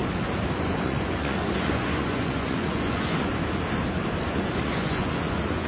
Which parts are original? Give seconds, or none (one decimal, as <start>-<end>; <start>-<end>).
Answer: 0.0-0.5; 3.3-4.2